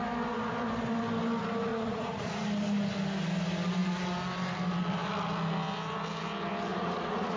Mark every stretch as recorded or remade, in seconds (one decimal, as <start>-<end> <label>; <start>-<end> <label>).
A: 0.0-1.7 recorded; 1.7-2.4 remade; 2.4-6.7 recorded; 6.7-7.4 remade